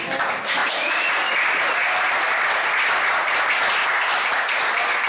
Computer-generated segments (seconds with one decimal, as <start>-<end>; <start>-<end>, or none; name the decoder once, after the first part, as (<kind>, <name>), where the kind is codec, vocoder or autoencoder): none